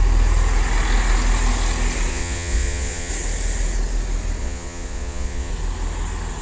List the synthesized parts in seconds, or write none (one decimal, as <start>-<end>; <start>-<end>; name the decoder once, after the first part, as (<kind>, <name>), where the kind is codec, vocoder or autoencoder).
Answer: 2.1-3.1 (vocoder, Vocos); 4.4-5.5